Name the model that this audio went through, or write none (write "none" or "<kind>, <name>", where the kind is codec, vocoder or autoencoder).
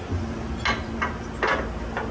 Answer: none